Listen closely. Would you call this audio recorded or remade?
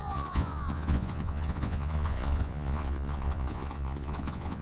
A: remade